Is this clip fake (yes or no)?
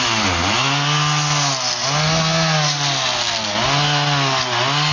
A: no